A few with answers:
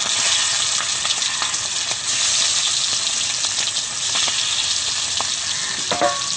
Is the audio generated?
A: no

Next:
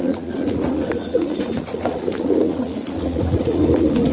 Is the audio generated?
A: yes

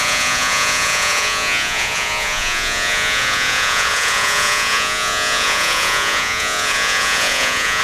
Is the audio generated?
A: yes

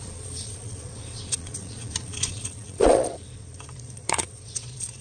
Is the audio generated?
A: yes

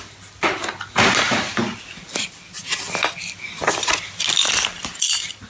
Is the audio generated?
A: no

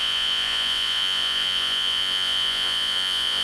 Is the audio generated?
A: yes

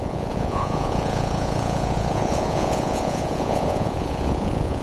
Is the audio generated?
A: yes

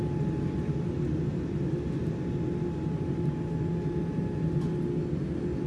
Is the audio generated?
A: no